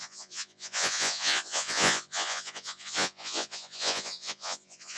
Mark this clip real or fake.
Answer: fake